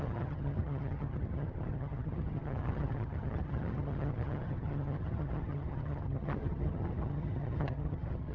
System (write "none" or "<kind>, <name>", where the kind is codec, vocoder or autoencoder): vocoder, HiFi-GAN